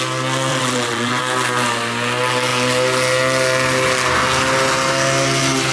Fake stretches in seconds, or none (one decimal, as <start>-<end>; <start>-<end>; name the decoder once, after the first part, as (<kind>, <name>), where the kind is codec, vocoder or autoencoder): 0.5-1.2 (vocoder, WaveNeXt)